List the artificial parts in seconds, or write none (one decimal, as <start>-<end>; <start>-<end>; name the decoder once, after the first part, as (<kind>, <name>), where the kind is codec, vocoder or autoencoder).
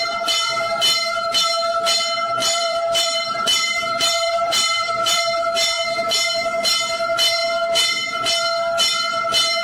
2.4-5.2 (vocoder, BigVGAN v2)